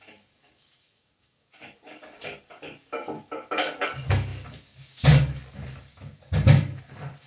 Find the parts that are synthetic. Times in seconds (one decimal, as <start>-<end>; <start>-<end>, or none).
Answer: 0.0-7.3